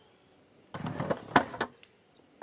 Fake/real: real